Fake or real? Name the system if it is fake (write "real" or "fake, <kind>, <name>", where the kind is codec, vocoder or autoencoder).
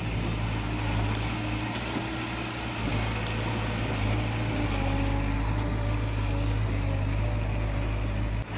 real